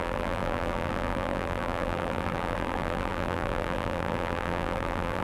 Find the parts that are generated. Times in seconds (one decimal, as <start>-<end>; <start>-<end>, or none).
0.0-5.2